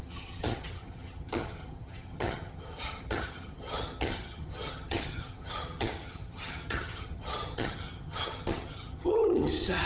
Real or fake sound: fake